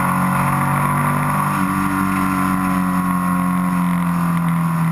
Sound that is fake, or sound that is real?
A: real